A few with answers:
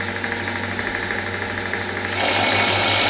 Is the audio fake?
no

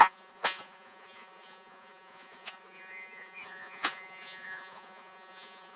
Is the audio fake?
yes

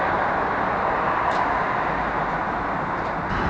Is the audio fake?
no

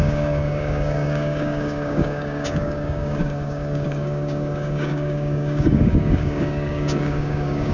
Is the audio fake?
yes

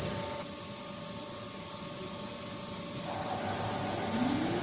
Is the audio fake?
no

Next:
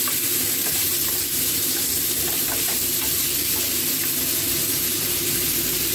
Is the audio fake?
yes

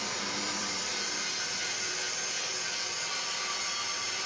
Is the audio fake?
yes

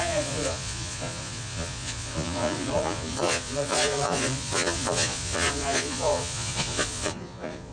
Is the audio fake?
yes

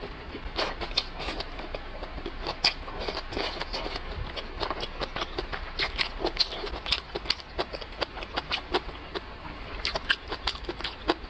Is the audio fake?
no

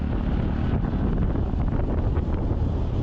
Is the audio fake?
no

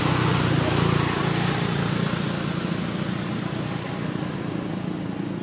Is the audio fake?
no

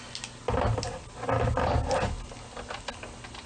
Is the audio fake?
no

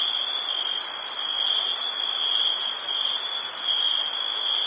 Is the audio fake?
no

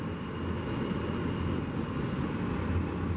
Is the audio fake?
no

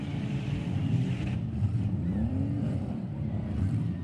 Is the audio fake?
yes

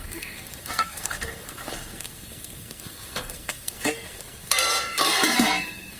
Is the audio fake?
yes